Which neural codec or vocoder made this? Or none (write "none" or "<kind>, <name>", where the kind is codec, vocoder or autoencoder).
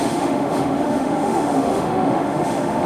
autoencoder, DAC-VAE